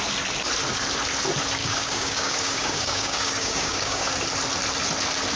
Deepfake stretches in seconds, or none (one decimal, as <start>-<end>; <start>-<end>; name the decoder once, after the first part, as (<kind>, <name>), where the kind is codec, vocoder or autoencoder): 1.6-4.1 (codec, DAC)